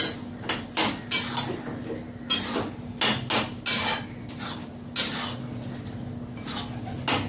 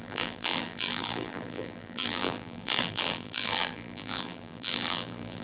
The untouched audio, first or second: first